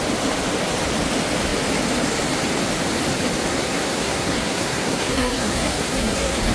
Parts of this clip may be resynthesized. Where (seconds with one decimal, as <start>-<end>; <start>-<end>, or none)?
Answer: 3.5-6.5